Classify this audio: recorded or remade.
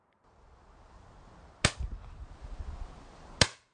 recorded